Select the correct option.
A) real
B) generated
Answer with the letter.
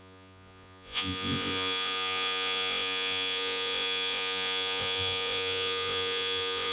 B